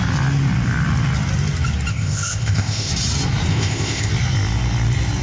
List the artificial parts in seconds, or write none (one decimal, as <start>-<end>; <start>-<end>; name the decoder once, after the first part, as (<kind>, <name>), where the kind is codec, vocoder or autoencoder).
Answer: 1.9-2.9 (codec, ZipCodec); 3.5-4.1